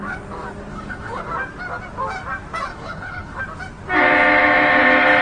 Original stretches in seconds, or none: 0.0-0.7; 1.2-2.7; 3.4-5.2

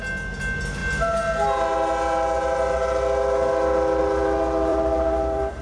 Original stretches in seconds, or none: 0.0-4.7

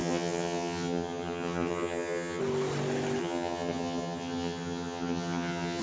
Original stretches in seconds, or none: 2.4-3.2

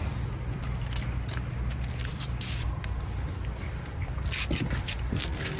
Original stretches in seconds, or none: 0.0-5.6

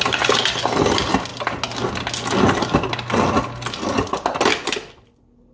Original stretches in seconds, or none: 0.0-5.5

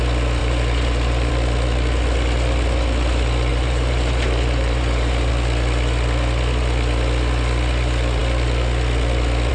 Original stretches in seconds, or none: 0.0-0.4; 1.3-3.5; 5.3-9.5